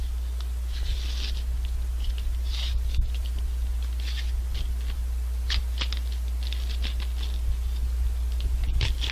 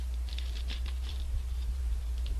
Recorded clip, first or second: first